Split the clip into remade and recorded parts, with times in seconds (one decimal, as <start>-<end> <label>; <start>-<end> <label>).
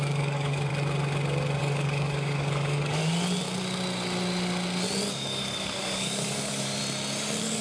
0.0-0.7 remade; 0.7-1.6 recorded; 1.6-3.0 remade; 3.0-5.1 recorded; 5.1-6.8 remade; 6.8-7.6 recorded